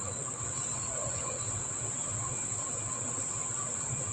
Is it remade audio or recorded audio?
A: remade